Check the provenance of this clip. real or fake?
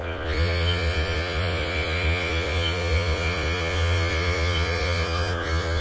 fake